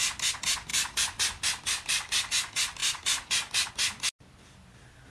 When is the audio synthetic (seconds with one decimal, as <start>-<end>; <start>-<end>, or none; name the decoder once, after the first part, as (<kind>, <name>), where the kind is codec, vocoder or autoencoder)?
none